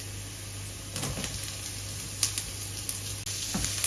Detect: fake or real real